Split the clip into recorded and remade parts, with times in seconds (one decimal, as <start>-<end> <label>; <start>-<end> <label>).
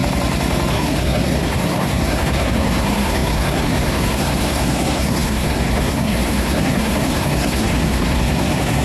0.0-0.7 recorded; 0.7-8.8 remade